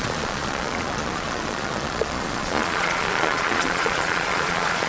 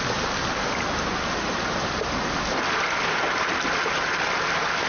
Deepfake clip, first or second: first